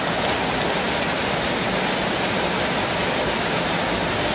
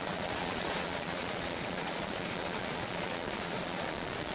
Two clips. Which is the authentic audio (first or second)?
first